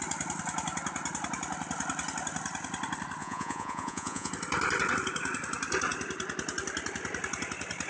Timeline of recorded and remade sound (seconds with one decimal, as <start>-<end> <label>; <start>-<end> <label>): 0.0-3.2 recorded; 3.2-4.3 remade; 4.3-7.9 recorded